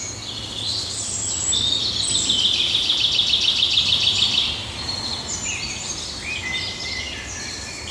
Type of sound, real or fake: real